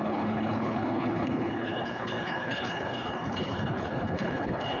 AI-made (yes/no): yes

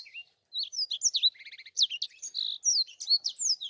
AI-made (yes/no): no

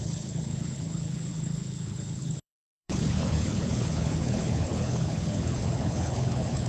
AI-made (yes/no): yes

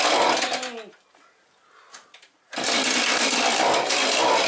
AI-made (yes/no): no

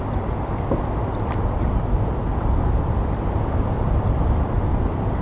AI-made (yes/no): no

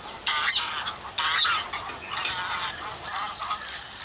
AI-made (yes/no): no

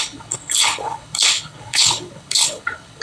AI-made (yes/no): yes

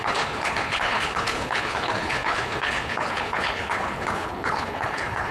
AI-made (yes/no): yes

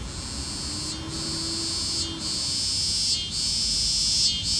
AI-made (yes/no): no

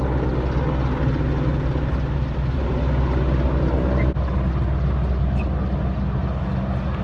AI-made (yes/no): no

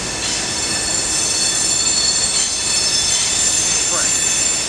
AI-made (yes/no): no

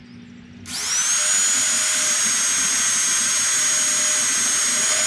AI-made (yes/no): no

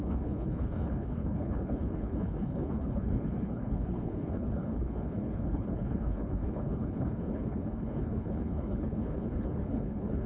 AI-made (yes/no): yes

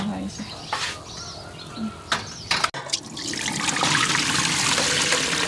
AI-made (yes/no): no